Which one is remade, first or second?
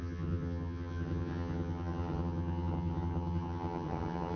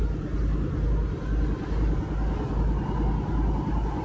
first